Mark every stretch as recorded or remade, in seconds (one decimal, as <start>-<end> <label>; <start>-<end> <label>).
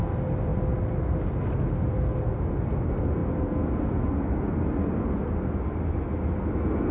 0.0-6.9 recorded